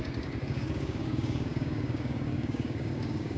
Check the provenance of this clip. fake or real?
fake